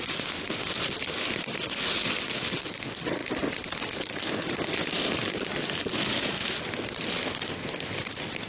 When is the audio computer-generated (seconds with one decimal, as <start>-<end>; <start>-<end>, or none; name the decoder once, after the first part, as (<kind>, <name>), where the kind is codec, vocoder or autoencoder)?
none